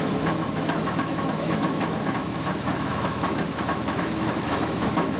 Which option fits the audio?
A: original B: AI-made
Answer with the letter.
B